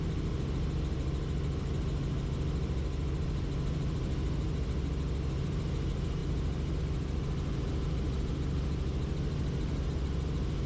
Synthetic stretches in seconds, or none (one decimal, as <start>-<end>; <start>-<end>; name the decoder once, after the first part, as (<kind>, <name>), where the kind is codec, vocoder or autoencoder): none